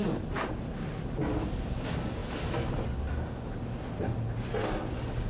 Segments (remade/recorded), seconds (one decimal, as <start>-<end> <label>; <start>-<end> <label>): 0.0-5.3 recorded